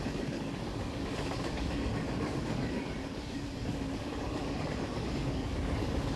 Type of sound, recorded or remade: remade